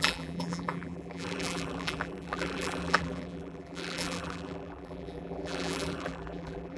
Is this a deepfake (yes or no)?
yes